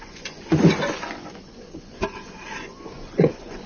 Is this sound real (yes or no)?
no